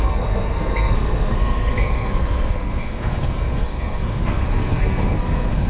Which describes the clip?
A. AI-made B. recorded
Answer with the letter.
A